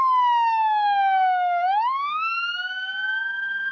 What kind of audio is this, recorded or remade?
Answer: remade